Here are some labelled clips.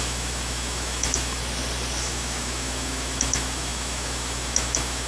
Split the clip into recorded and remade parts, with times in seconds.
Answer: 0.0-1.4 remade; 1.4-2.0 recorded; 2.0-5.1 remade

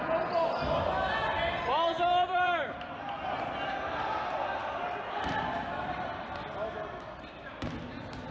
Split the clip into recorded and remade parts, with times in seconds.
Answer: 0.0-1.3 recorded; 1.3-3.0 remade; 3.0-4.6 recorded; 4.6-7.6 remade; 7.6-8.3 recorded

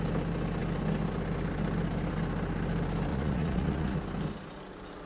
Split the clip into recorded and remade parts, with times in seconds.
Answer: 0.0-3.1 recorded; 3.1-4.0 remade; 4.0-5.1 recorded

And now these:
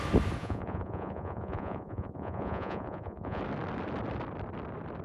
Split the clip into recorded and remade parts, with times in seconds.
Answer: 0.0-0.4 recorded; 0.4-3.4 remade; 3.4-5.0 recorded